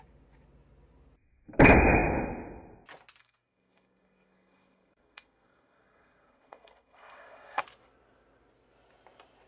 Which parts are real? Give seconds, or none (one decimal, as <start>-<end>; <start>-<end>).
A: 0.0-3.2; 7.6-9.5